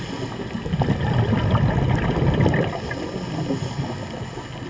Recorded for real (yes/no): yes